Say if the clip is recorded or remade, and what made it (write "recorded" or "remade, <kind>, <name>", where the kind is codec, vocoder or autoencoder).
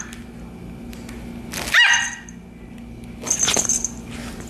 recorded